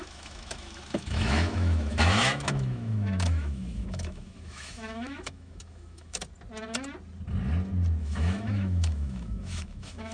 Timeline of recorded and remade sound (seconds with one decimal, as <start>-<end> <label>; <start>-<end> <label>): 0.0-6.2 remade; 6.2-8.0 recorded; 8.0-10.1 remade